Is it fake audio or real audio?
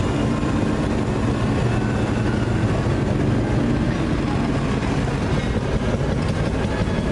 real